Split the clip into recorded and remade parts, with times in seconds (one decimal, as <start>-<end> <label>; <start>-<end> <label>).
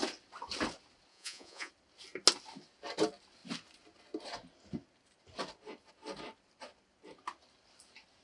0.0-1.1 recorded; 1.1-1.7 remade; 1.7-8.2 recorded